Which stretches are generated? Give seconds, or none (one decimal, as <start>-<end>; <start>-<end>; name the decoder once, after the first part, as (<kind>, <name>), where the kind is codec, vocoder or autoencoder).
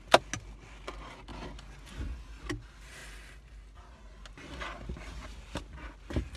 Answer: none